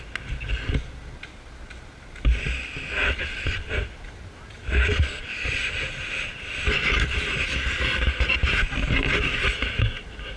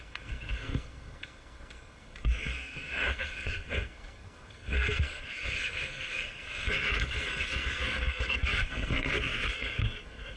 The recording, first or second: first